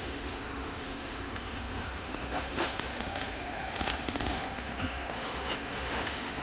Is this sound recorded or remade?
remade